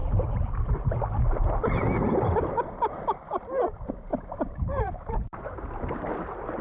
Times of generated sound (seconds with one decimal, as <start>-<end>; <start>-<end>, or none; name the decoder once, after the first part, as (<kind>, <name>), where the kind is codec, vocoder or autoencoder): 4.1-6.1 (vocoder, BigVGAN v2)